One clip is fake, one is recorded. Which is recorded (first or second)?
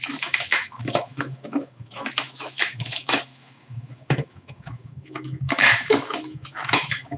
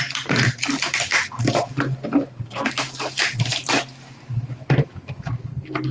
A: second